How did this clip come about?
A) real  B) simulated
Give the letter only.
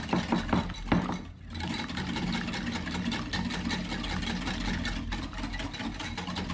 A